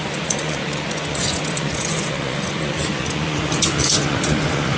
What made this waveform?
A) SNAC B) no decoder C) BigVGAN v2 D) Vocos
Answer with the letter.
D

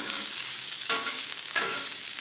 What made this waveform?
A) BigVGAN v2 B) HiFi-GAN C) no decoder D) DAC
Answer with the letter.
D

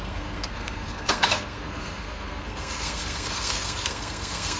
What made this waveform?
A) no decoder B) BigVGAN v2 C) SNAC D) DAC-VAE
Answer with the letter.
C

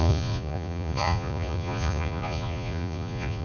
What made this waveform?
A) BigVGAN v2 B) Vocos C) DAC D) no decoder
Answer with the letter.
B